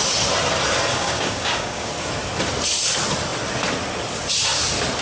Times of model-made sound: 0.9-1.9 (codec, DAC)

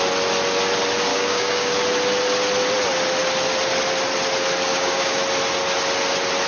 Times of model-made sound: 1.1-1.7 (codec, DAC); 4.7-5.2

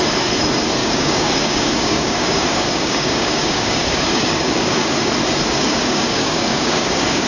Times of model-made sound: 0.8-5.1 (codec, DAC); 5.5-7.3

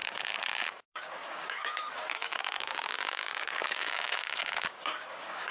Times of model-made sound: 0.0-5.5 (codec, DAC)

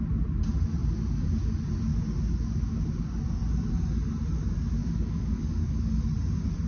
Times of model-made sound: 4.8-6.0 (codec, DAC)

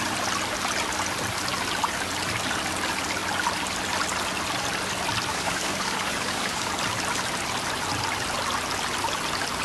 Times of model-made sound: 5.3-6.7 (codec, DAC)

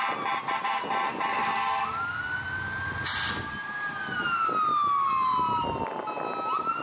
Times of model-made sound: 1.3-2.2 (codec, DAC)